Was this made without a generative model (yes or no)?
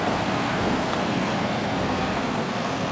no